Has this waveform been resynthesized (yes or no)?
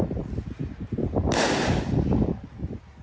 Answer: no